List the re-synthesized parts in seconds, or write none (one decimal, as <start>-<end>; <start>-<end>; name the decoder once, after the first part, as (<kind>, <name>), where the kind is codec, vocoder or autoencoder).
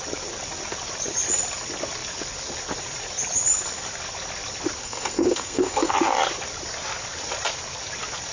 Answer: 4.8-5.9 (codec, SNAC)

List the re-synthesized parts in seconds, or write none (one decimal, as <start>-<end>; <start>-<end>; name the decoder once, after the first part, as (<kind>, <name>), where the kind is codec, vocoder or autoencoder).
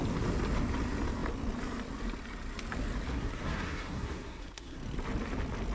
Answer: 3.1-4.8 (codec, SNAC)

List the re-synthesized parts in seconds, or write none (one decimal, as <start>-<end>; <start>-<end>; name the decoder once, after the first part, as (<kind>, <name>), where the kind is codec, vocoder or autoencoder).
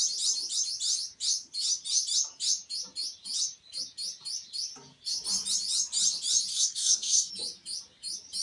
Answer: 6.5-7.3 (codec, SNAC)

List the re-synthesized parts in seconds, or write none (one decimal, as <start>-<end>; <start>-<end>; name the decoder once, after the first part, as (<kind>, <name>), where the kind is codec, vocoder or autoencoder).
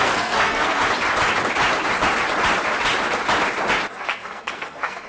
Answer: 0.0-0.8 (codec, SNAC); 3.9-5.1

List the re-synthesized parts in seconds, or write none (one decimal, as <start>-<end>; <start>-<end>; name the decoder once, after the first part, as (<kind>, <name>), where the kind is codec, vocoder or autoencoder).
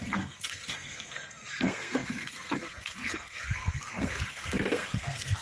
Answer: 0.0-5.4 (codec, SNAC)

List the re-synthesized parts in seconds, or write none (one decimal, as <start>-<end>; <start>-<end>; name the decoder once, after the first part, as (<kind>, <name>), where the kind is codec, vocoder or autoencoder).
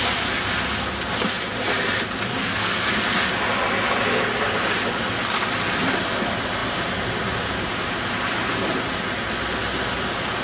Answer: 2.4-2.9 (codec, SNAC)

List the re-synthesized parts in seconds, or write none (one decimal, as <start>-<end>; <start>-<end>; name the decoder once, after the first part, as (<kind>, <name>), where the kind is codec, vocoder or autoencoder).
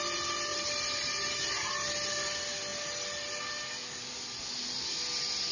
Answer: none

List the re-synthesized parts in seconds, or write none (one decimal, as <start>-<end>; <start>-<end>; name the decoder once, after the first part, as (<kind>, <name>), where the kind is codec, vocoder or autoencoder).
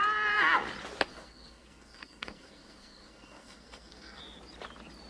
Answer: 1.1-4.2 (codec, SNAC)